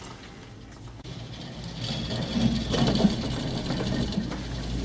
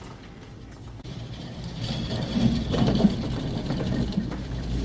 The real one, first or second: first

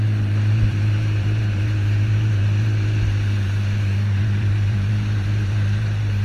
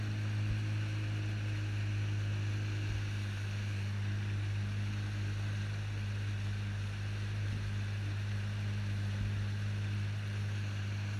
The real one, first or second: second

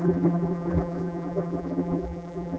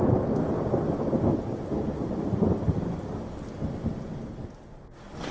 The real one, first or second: second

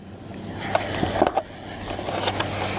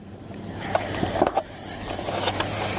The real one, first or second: first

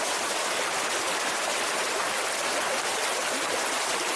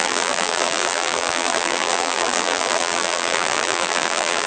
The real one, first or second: first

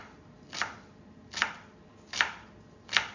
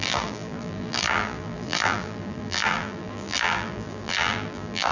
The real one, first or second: first